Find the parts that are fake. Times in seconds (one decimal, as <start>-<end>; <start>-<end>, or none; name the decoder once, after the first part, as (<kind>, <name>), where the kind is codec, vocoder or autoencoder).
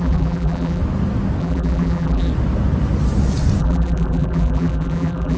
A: 0.0-0.8 (vocoder, BigVGAN v2); 1.4-2.3; 3.6-5.4